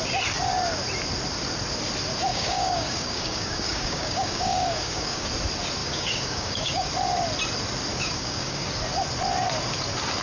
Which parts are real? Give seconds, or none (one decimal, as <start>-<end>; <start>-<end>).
0.0-2.3; 5.3-5.8; 6.9-7.9; 8.7-10.2